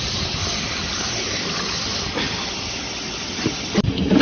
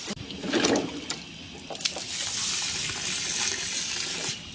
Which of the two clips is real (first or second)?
first